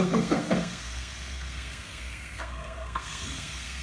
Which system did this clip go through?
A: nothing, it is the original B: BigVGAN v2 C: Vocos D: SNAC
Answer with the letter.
D